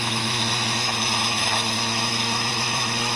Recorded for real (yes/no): no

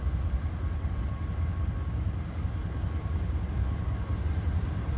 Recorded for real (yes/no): yes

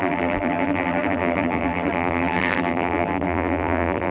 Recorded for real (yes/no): no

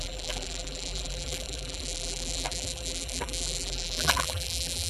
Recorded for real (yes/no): no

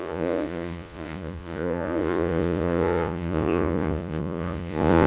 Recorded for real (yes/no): no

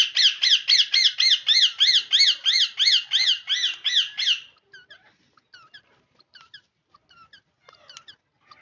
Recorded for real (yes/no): yes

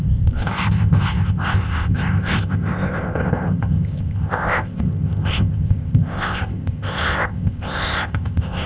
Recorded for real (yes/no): no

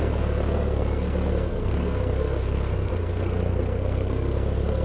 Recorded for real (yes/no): no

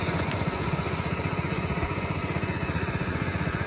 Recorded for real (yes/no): no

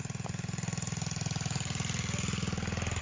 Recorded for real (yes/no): yes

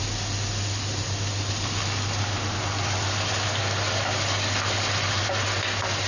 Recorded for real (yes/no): yes